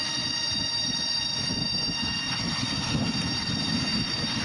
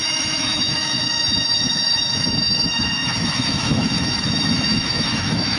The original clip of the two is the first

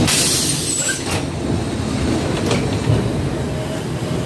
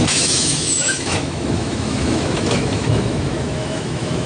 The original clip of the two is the first